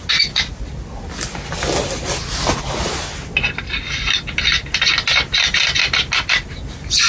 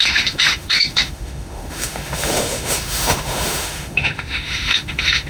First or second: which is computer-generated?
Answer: second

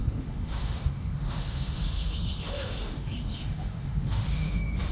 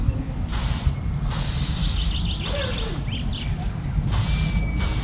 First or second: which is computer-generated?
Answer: first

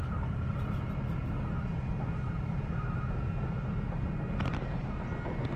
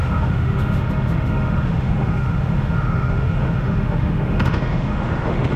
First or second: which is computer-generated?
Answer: second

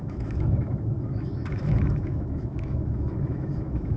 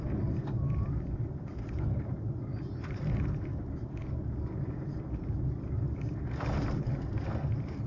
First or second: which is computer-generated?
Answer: first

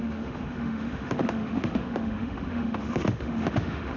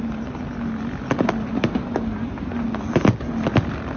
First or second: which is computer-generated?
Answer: first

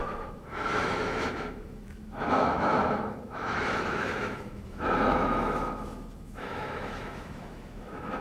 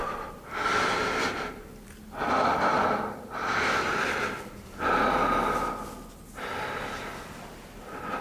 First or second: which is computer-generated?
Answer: first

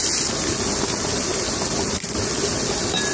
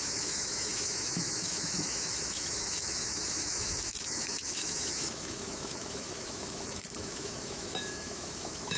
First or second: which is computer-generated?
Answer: second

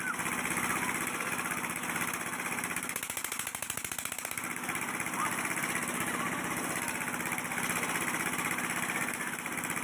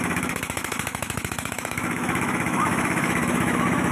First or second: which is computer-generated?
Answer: second